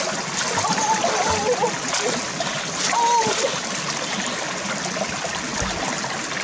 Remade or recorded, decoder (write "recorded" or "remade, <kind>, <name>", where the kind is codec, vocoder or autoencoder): recorded